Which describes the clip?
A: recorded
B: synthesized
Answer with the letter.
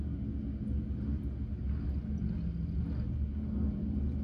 A